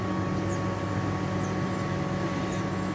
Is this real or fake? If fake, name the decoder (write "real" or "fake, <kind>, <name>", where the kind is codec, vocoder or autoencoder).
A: real